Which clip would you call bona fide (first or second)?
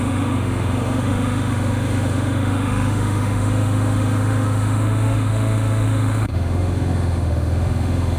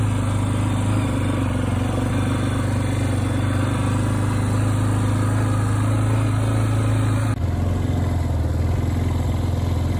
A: second